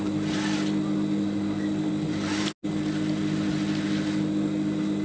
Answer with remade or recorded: recorded